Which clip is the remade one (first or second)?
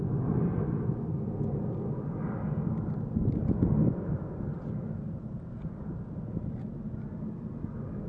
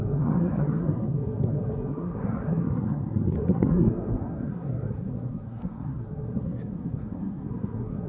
second